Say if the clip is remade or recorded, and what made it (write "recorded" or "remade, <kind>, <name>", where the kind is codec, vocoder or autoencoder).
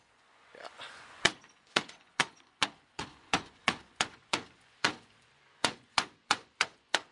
remade, vocoder, Vocos